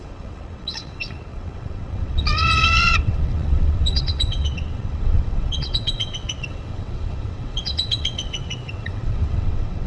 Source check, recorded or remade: remade